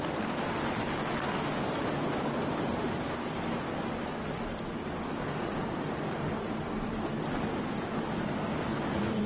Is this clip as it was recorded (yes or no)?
yes